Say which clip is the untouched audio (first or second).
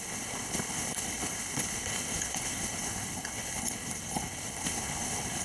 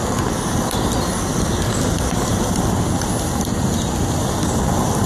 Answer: second